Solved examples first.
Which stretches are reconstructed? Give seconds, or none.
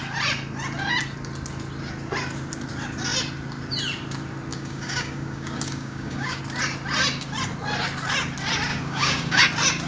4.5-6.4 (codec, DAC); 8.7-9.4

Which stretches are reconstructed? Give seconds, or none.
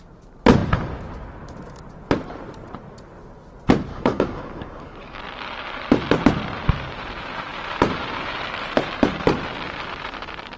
3.9-5.2 (codec, DAC)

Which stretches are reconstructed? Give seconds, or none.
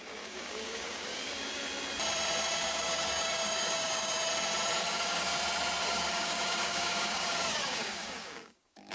0.0-1.6 (codec, DAC); 2.5-4.3; 4.8-5.3; 5.8-8.9